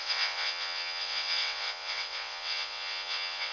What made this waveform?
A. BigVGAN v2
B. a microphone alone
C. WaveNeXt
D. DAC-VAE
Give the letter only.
C